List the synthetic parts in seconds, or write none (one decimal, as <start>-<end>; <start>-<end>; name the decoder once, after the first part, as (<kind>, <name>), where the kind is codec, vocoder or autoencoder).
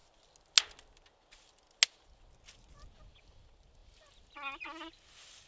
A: none